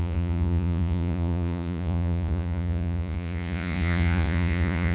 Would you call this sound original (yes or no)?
no